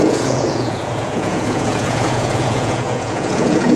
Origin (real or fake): fake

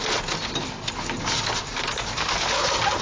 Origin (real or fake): real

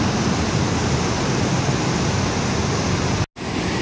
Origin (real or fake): real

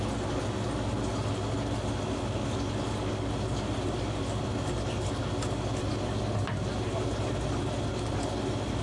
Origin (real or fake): real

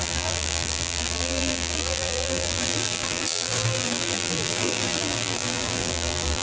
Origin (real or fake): fake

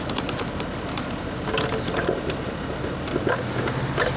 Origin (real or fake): fake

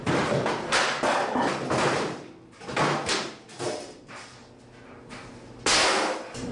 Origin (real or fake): real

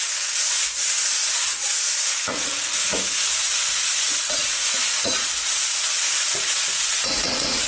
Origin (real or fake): fake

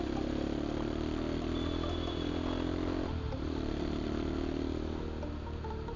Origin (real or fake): real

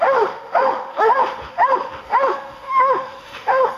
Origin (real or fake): fake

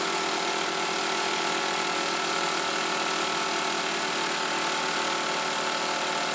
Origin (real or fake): real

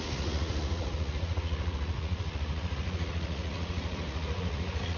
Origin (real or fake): fake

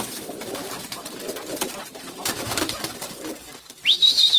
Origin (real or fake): fake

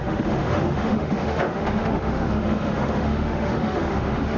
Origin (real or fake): fake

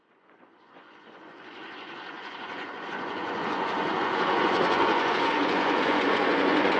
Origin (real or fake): fake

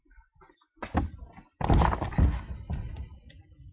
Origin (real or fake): real